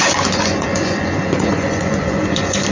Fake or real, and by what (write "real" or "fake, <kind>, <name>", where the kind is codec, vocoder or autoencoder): fake, vocoder, Vocos